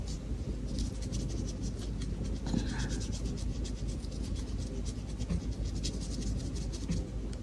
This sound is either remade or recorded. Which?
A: recorded